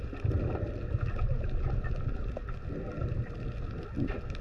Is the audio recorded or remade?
recorded